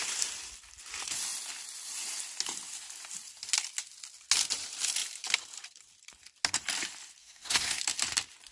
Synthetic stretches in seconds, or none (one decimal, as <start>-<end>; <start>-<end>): 7.2-7.8